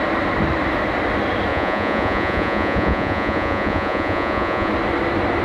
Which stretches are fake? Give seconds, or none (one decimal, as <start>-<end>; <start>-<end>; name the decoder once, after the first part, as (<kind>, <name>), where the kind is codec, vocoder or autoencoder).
1.5-4.7 (vocoder, Vocos)